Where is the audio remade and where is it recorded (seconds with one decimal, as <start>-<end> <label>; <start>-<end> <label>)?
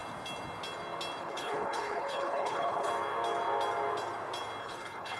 0.0-1.2 recorded; 1.2-2.9 remade; 2.9-4.6 recorded; 4.6-5.2 remade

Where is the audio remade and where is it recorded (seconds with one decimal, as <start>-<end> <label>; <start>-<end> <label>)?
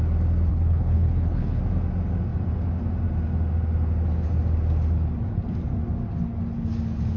0.0-0.5 recorded; 0.5-1.6 remade; 1.6-7.2 recorded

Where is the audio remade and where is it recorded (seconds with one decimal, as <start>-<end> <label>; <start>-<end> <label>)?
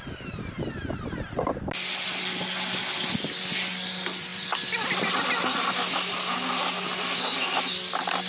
0.0-8.3 recorded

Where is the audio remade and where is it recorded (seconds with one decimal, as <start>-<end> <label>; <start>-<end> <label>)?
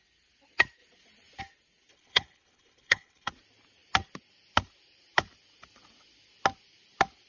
0.0-1.9 recorded; 1.9-3.3 remade; 3.3-7.3 recorded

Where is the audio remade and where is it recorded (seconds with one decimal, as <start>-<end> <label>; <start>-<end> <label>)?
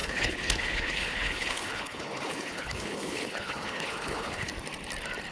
0.0-4.5 remade; 4.5-5.3 recorded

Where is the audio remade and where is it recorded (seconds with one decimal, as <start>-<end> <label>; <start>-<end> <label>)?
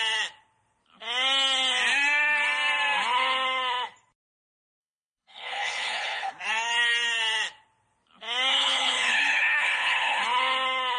0.0-4.8 recorded; 4.8-6.3 remade; 6.3-8.5 recorded; 8.5-10.2 remade; 10.2-11.0 recorded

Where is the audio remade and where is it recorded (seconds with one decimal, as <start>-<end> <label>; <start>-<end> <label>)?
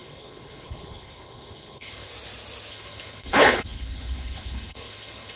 0.0-2.1 remade; 2.1-2.7 recorded; 2.7-5.4 remade